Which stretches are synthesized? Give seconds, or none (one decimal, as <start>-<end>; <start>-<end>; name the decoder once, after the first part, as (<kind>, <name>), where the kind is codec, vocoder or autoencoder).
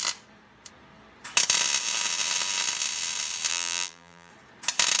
3.5-4.3 (vocoder, BigVGAN v2)